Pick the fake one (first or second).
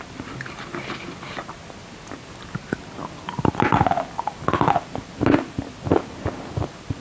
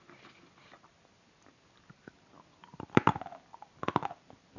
second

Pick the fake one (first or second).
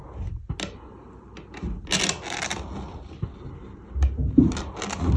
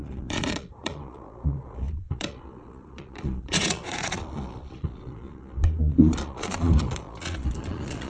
second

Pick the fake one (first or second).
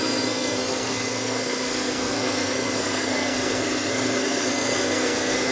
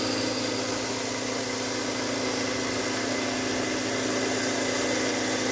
first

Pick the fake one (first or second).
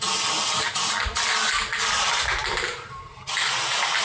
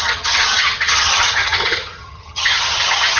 second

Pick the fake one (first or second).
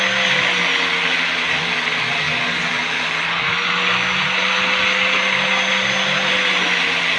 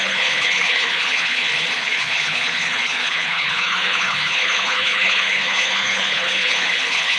second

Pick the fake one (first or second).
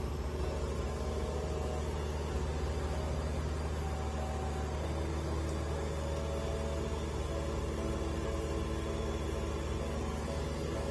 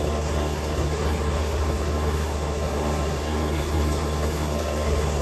second